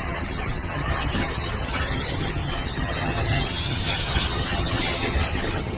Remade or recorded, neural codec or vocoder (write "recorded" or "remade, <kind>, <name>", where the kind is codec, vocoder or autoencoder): remade, vocoder, HiFi-GAN